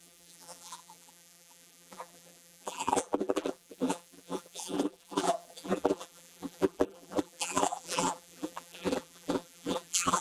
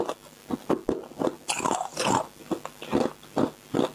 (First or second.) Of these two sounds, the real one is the second